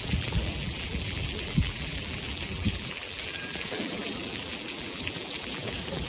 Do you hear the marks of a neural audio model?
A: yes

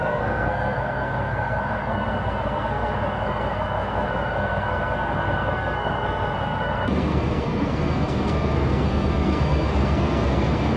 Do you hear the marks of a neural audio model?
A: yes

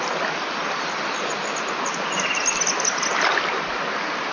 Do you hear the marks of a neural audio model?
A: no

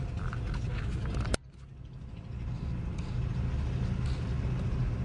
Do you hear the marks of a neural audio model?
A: no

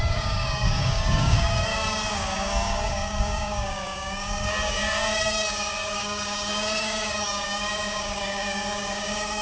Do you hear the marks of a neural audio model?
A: yes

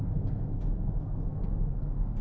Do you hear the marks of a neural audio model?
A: yes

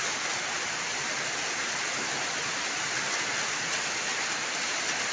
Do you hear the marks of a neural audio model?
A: no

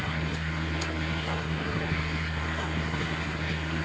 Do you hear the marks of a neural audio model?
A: yes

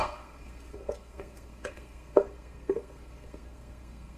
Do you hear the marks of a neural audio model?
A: yes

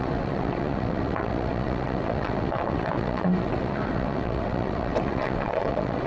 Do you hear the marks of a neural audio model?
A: yes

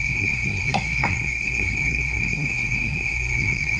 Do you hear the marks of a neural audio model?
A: yes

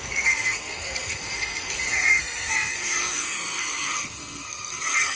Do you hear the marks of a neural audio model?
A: yes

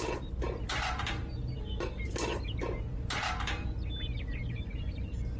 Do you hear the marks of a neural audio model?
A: yes